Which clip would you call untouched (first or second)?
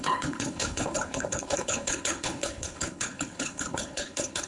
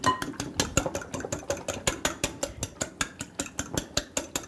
second